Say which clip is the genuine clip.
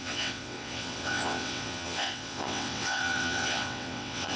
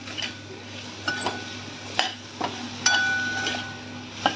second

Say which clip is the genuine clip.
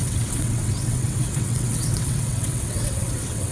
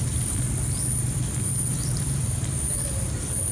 second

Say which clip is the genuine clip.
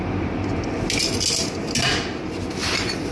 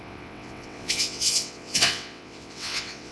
first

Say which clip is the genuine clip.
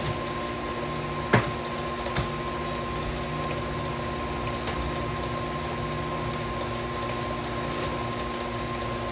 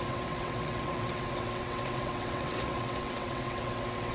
first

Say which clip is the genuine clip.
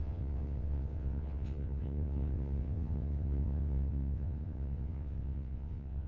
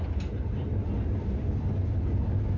second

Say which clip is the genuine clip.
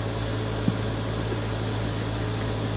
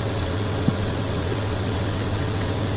first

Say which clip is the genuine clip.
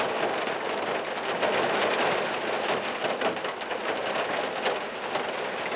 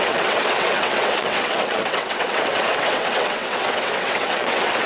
first